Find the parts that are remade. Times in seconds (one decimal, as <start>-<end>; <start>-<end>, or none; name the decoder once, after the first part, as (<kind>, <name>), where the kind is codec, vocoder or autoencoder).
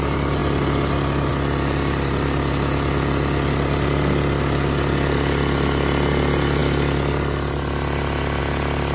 none